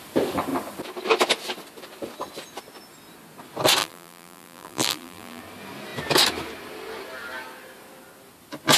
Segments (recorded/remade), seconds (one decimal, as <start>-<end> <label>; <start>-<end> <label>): 0.0-3.8 recorded; 3.8-5.4 remade; 5.4-8.8 recorded